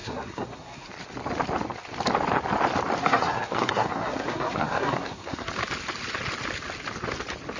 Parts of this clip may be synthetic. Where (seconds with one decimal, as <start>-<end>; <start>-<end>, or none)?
0.0-0.9; 3.0-5.5